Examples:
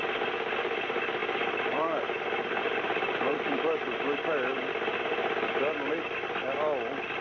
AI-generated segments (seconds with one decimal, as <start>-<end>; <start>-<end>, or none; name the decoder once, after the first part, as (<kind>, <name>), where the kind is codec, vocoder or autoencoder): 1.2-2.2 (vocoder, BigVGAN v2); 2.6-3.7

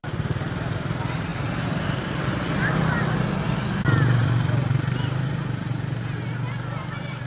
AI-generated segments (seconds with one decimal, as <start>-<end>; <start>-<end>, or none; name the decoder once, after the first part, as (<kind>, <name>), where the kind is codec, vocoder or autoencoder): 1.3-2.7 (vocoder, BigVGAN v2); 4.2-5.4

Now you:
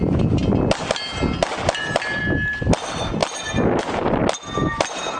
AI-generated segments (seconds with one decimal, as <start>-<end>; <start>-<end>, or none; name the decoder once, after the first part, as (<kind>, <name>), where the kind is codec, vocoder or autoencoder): none

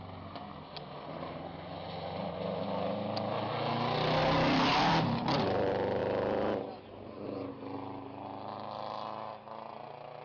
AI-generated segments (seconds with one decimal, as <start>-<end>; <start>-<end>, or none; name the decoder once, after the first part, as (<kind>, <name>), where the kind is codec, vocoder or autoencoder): 4.2-5.2 (vocoder, BigVGAN v2)

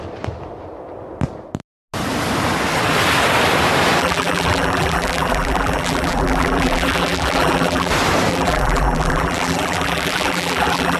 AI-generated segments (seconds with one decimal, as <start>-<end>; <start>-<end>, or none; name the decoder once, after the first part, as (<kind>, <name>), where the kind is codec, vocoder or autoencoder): 4.0-7.9 (vocoder, BigVGAN v2); 8.3-11.0

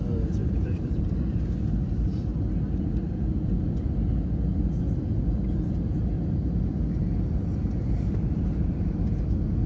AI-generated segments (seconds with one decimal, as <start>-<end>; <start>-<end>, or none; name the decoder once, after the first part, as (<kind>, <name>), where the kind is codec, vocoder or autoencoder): 0.4-1.0 (vocoder, BigVGAN v2); 7.6-8.4

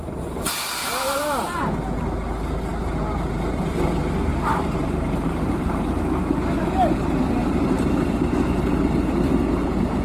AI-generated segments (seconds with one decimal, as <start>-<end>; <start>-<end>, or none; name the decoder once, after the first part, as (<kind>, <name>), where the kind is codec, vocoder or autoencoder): 0.8-1.6 (vocoder, BigVGAN v2); 4.3-6.0; 7.4-8.6